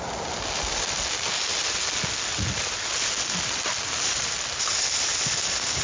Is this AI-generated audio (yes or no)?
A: no